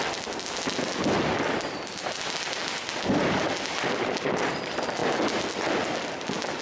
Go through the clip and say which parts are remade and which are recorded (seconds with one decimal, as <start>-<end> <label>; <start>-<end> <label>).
0.0-6.6 recorded